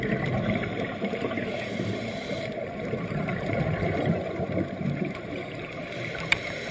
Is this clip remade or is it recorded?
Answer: remade